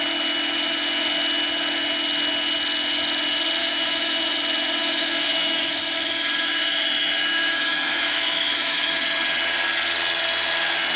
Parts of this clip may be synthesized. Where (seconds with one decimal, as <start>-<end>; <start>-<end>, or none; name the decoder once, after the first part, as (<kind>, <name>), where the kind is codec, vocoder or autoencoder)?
3.6-4.2 (autoencoder, DAC-VAE); 4.8-8.9